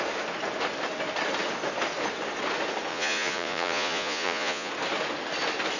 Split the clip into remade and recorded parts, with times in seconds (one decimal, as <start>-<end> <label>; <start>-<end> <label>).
0.0-2.9 recorded; 2.9-4.7 remade; 4.7-5.8 recorded

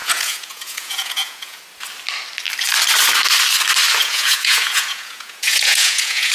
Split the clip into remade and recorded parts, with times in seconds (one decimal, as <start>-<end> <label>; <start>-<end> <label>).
0.0-1.6 remade; 1.6-4.0 recorded; 4.0-6.3 remade

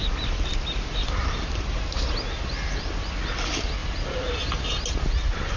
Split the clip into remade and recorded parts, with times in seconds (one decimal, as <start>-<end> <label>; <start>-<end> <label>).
0.0-5.6 recorded

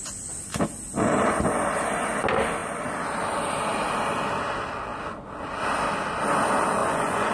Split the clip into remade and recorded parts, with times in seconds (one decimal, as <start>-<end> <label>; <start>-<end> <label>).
0.0-6.8 recorded; 6.8-7.3 remade

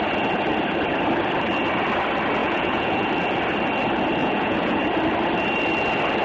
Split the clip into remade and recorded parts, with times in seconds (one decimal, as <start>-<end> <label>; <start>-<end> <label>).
0.0-2.4 recorded; 2.4-3.1 remade; 3.1-4.2 recorded; 4.2-4.8 remade; 4.8-6.2 recorded

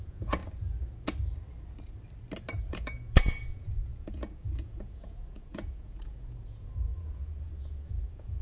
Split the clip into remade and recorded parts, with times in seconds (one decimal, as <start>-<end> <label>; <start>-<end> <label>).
0.0-0.4 remade; 0.4-2.6 recorded; 2.6-8.4 remade

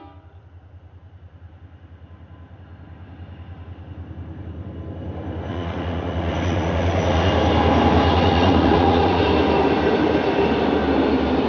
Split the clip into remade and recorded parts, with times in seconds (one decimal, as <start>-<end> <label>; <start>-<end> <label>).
0.0-5.5 recorded; 5.5-7.3 remade; 7.3-8.1 recorded; 8.1-9.2 remade; 9.2-11.5 recorded